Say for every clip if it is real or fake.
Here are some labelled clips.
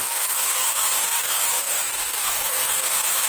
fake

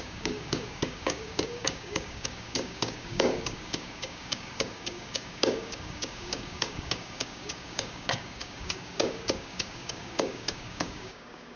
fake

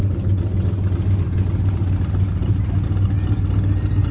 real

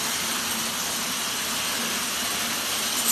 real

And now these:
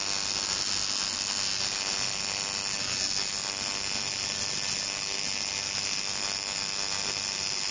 real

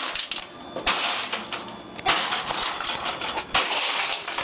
real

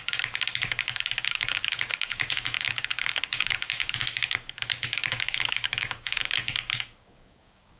fake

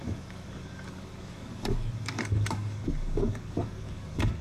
fake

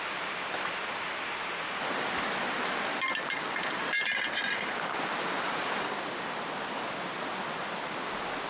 real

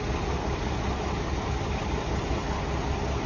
real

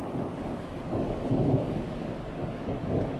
fake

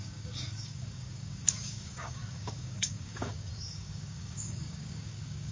fake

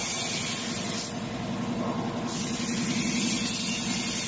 real